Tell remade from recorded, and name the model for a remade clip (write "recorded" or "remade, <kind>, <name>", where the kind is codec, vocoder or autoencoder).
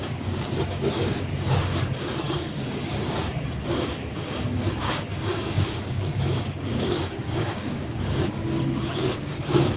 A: remade, codec, DAC